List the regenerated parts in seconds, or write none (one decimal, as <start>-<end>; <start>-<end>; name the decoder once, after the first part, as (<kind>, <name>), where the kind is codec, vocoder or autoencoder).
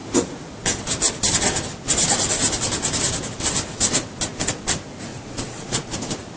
5.1-5.9 (vocoder, Vocos)